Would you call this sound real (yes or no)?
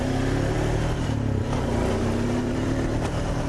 no